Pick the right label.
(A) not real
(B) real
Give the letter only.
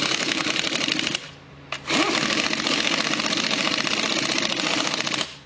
B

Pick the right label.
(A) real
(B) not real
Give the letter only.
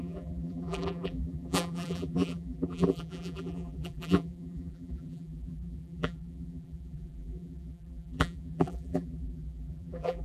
B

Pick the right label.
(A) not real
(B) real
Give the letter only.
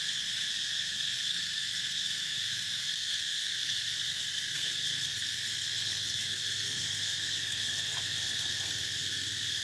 A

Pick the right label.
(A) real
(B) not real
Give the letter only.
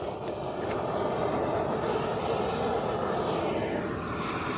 A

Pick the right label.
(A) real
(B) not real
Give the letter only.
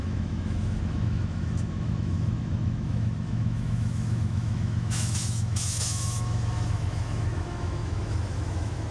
B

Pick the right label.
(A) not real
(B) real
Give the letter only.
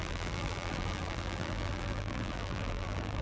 A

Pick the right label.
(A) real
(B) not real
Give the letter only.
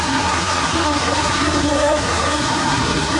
B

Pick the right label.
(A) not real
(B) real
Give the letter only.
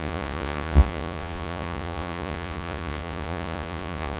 A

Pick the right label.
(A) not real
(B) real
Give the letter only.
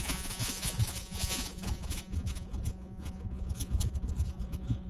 A